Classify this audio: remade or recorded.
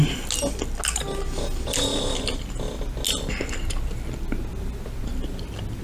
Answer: recorded